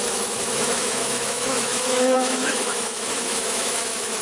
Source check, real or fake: fake